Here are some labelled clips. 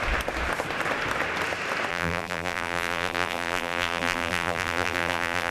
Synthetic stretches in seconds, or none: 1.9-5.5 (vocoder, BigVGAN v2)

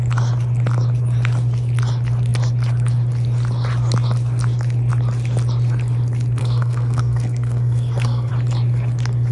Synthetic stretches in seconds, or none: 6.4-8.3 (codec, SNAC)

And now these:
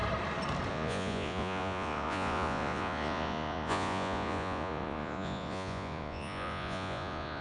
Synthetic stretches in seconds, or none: 0.7-7.4 (vocoder, Vocos)

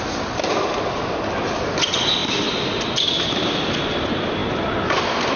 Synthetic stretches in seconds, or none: none

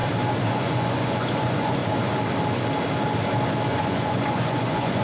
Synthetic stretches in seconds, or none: 0.5-1.8 (vocoder, Vocos); 3.7-5.0

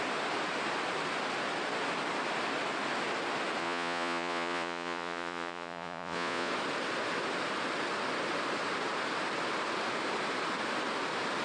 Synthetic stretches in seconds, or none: 3.6-6.5 (vocoder, Vocos)

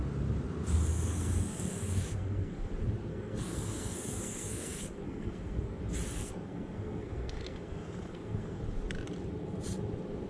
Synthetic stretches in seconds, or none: 0.9-2.7 (codec, SNAC); 3.1-5.8; 6.2-8.6

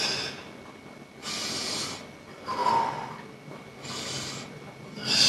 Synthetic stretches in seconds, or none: none